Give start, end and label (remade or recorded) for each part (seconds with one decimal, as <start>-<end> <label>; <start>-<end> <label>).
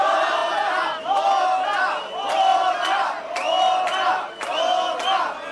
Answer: 0.0-0.4 recorded; 0.4-1.0 remade; 1.0-2.5 recorded; 2.5-3.6 remade; 3.6-5.5 recorded